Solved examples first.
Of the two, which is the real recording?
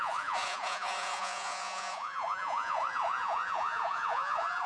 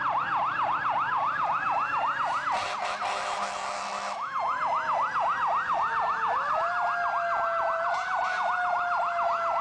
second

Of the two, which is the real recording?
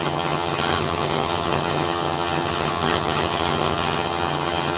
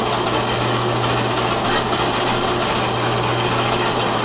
second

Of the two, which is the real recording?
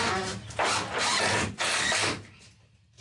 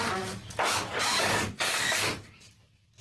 first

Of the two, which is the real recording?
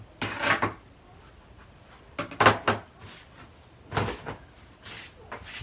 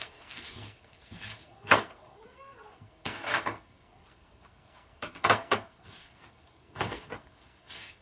first